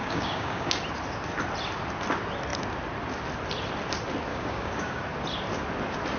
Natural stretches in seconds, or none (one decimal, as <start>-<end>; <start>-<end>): 0.7-4.3; 5.0-6.2